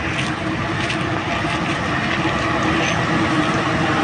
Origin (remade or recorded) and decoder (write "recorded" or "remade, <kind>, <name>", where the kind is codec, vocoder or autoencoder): recorded